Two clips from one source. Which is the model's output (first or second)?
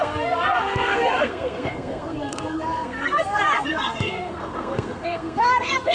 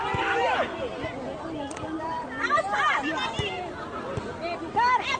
first